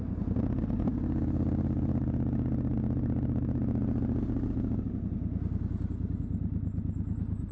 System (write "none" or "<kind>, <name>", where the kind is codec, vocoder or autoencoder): none